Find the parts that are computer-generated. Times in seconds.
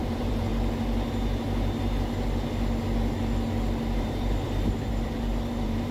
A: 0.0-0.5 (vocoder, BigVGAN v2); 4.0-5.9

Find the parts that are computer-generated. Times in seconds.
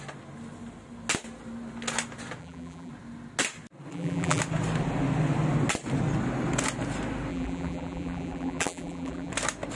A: 2.4-2.9 (vocoder, BigVGAN v2); 3.9-4.4; 7.3-9.3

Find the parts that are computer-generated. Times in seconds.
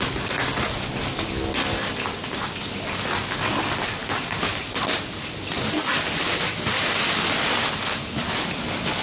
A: 4.0-5.4 (vocoder, BigVGAN v2)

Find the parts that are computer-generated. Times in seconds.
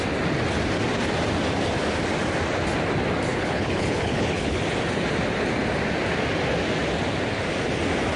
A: 3.3-4.6 (codec, HILCodec)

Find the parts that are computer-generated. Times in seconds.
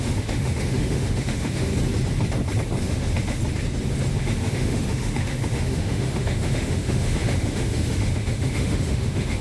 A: 0.0-1.7 (autoencoder, DAC-VAE); 2.8-3.4; 4.1-9.4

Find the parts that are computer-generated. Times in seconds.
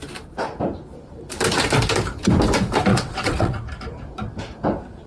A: 2.9-3.6 (vocoder, WaveNeXt)